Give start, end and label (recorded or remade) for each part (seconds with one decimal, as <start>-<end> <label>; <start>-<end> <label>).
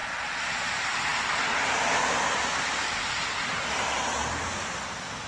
0.0-0.7 remade; 0.7-5.3 recorded